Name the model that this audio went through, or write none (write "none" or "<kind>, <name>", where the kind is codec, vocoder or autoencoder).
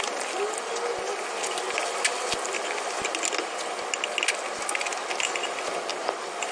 none